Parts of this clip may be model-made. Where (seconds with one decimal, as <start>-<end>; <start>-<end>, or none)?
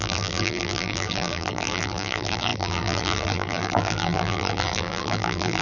0.0-5.6